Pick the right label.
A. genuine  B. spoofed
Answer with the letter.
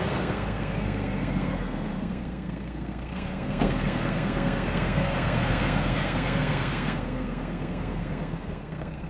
B